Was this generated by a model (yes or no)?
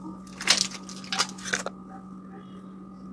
no